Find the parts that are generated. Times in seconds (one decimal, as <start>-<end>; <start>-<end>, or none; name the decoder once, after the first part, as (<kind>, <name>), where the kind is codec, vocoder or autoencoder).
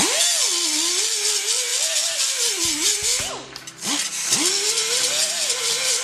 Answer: none